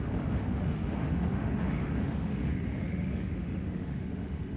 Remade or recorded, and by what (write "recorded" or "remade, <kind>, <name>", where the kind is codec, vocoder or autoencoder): remade, autoencoder, DAC-VAE